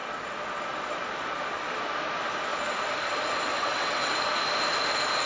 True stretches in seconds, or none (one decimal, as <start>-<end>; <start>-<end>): 0.0-3.5; 4.1-5.3